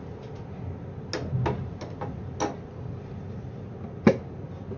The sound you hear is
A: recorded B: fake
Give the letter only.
A